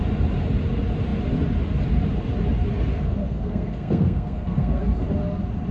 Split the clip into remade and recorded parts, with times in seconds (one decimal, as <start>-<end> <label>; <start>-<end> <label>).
0.0-2.9 recorded; 2.9-4.8 remade; 4.8-5.7 recorded

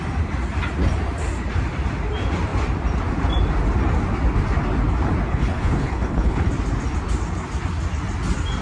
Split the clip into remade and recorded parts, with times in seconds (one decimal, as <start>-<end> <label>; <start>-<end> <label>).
0.0-5.3 recorded; 5.3-6.5 remade; 6.5-8.6 recorded